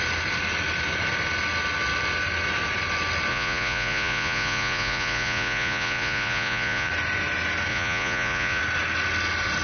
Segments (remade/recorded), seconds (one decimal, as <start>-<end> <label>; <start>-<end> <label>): 0.0-3.3 recorded; 3.3-6.9 remade; 6.9-7.7 recorded; 7.7-8.6 remade; 8.6-9.6 recorded